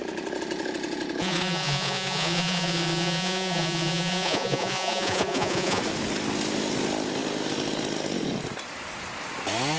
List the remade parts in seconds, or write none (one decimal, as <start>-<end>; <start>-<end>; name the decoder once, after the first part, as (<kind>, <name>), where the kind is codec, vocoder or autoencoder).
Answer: 1.2-5.8 (vocoder, Vocos)